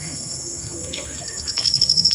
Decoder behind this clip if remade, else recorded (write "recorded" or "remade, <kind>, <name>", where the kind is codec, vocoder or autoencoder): remade, codec, SNAC